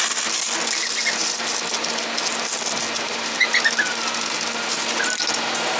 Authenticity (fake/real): real